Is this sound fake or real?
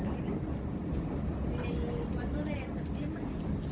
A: real